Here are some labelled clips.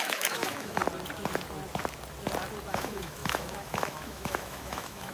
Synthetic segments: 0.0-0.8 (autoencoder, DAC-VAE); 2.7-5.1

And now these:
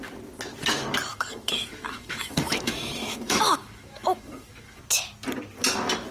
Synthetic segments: 1.1-4.8 (autoencoder, DAC-VAE)

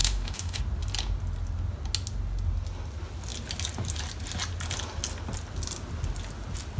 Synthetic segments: 0.0-0.6 (autoencoder, DAC-VAE)

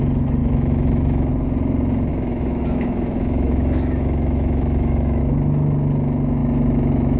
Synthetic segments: 0.4-1.3 (autoencoder, DAC-VAE); 2.1-5.2; 6.4-7.2

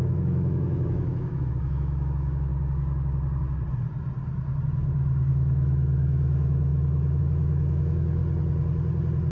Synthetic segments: 0.0-2.5 (autoencoder, DAC-VAE); 5.3-8.2

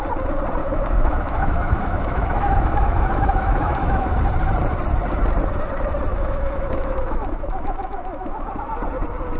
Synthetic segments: 0.6-4.1 (autoencoder, DAC-VAE); 6.1-8.5